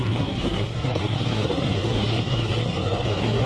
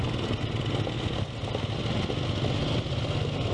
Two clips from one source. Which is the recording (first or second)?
second